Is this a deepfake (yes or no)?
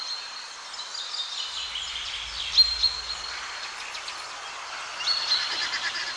no